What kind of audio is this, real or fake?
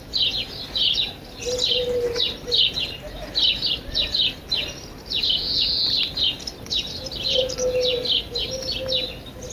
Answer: real